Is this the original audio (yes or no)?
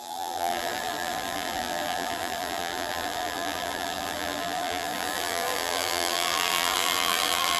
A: no